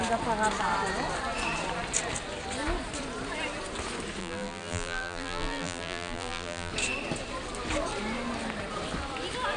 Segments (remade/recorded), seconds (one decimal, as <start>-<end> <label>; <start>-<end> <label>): 0.0-4.2 recorded; 4.2-6.7 remade; 6.7-9.6 recorded